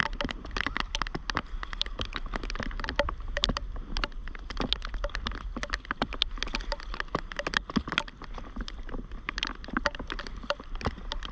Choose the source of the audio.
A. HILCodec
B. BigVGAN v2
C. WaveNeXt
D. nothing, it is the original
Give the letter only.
D